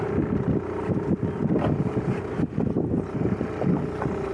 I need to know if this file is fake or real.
real